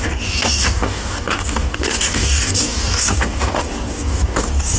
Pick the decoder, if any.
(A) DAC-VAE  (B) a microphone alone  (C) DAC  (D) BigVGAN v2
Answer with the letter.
C